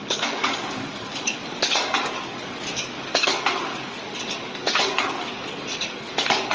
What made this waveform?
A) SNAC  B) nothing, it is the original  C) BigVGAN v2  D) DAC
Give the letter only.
D